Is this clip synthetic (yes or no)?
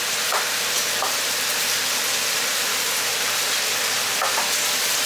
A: yes